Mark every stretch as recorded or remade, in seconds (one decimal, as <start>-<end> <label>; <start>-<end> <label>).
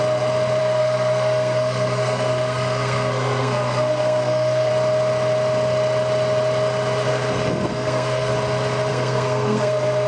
0.0-0.6 recorded; 0.6-4.7 remade; 4.7-7.1 recorded; 7.1-8.3 remade; 8.3-8.9 recorded; 8.9-10.1 remade